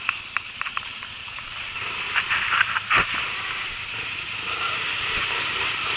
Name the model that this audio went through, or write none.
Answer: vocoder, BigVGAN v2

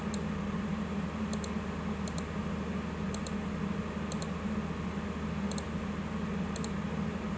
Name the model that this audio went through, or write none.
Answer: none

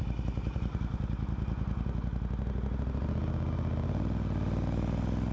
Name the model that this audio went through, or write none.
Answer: none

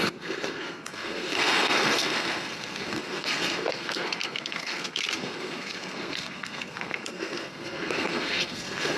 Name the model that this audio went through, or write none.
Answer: codec, SNAC